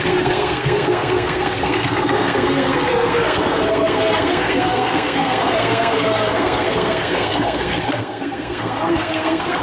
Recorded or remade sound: remade